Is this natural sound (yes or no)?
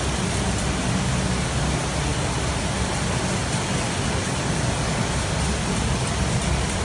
yes